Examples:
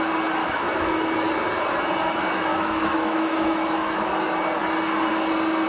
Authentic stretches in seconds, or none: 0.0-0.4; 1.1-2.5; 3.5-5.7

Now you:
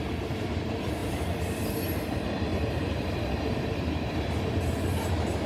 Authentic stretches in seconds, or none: 0.0-2.5; 5.1-5.5